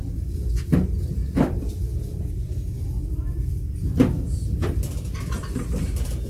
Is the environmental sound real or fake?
real